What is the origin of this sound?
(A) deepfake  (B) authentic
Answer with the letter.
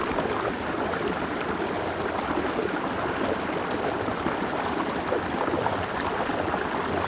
B